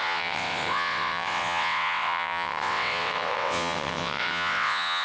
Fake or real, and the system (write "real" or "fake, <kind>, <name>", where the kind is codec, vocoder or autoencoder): fake, vocoder, WaveNeXt